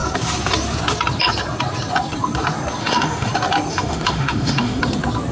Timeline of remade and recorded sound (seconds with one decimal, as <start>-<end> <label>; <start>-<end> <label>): 0.0-2.8 recorded; 2.8-3.3 remade; 3.3-3.7 recorded; 3.7-4.8 remade; 4.8-5.3 recorded